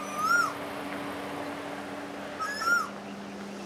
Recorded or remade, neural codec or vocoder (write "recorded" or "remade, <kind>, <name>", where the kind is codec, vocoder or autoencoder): recorded